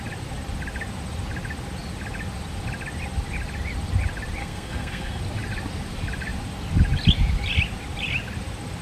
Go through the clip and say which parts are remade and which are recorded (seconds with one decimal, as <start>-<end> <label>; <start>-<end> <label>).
0.0-4.4 recorded; 4.4-5.2 remade; 5.2-8.8 recorded